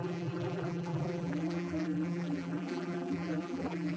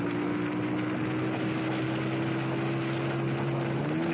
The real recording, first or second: second